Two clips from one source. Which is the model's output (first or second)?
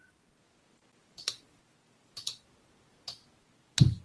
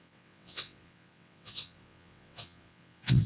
second